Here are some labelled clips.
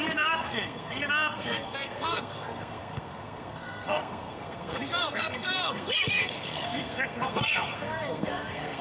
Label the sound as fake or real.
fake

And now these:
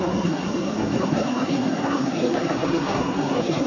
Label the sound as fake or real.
fake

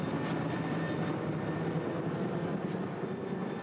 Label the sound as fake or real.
real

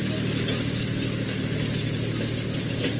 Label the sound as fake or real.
real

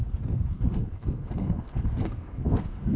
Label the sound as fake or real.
fake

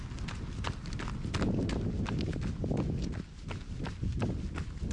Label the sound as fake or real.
real